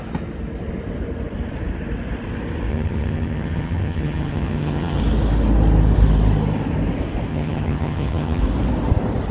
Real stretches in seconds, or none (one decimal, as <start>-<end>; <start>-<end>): 0.0-2.7; 5.0-7.3; 8.4-9.3